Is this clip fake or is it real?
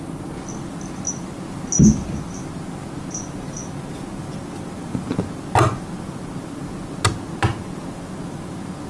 real